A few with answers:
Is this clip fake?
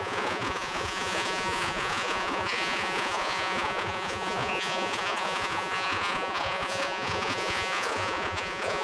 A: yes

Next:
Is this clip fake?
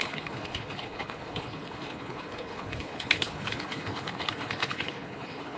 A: yes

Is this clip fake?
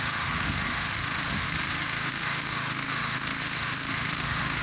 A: yes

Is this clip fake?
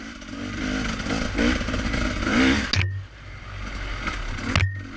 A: no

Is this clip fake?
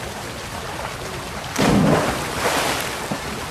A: no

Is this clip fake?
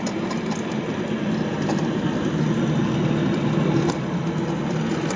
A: no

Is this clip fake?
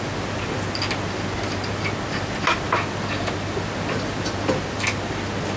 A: no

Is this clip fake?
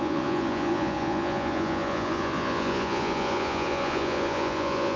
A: yes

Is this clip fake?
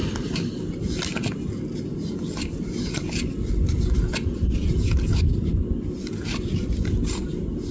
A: no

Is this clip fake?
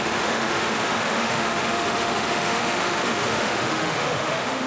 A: yes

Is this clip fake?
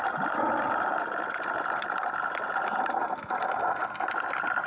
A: no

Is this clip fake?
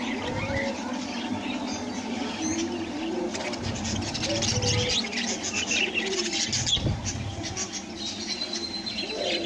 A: no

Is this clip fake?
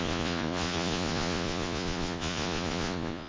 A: yes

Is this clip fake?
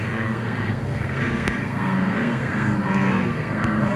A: yes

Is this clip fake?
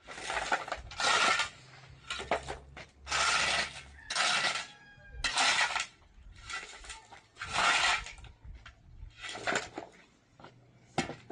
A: no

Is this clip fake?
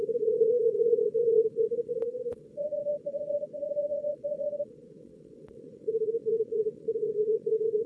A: yes